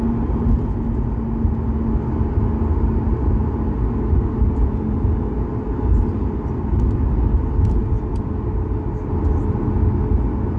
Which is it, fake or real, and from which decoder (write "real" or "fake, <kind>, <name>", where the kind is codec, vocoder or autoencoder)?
real